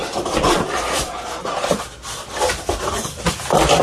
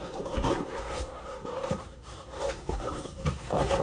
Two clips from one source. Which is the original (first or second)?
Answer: first